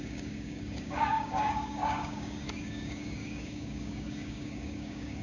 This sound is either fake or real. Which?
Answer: fake